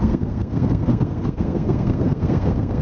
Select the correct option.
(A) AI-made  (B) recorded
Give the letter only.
A